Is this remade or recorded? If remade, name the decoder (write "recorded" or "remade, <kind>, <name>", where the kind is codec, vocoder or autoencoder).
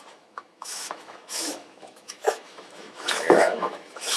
remade, autoencoder, DAC-VAE